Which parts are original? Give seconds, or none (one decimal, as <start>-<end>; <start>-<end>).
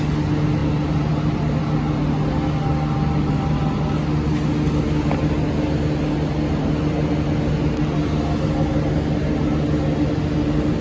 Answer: 0.0-10.8